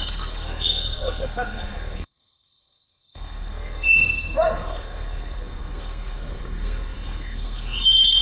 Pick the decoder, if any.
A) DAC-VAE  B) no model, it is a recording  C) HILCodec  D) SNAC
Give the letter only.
D